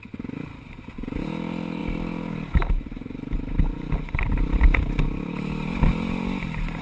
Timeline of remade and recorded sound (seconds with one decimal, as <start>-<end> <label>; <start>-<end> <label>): 0.0-6.8 recorded